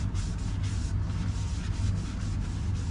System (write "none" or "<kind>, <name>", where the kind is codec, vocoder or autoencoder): none